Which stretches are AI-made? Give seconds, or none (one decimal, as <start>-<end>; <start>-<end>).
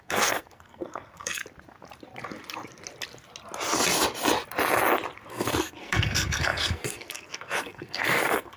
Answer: 0.0-1.4; 5.3-8.6